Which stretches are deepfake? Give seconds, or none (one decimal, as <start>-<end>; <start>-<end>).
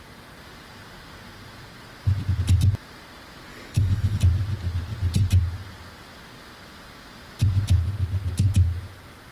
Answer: 3.5-4.2